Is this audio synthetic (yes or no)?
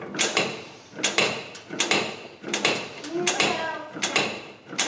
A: yes